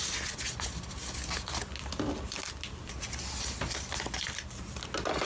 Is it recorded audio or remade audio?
recorded